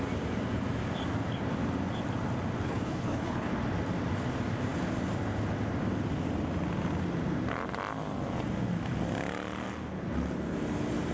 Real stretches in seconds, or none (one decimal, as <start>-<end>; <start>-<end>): 0.0-2.6; 3.5-11.1

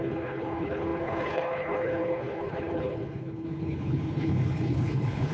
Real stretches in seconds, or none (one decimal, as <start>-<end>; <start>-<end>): none

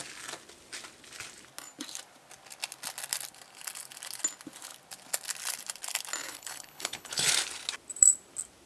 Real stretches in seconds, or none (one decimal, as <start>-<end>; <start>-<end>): 0.0-6.2; 7.3-8.7

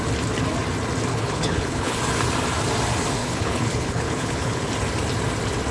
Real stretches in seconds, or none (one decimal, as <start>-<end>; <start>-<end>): 0.0-1.1; 2.0-3.2; 4.7-5.7

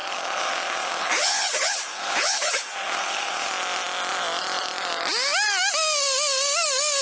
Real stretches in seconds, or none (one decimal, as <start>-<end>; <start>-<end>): 3.5-7.0

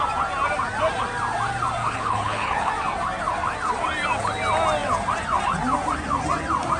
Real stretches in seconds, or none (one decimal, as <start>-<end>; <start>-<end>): 0.0-1.8; 2.7-6.8

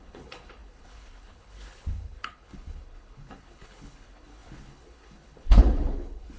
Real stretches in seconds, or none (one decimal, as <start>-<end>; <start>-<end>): none